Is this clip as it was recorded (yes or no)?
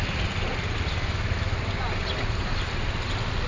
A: yes